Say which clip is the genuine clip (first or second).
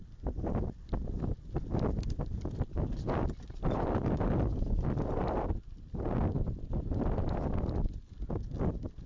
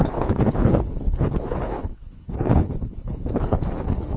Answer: first